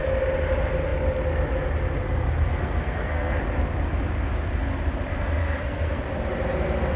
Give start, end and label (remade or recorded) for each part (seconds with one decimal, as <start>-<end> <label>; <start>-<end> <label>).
0.0-2.6 recorded; 2.6-3.4 remade; 3.4-5.4 recorded; 5.4-6.0 remade; 6.0-7.0 recorded